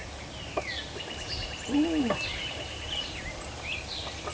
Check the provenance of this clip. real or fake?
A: real